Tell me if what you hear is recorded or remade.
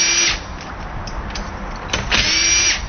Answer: recorded